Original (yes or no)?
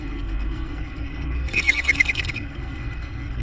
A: no